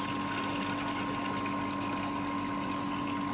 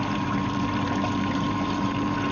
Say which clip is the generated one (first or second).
second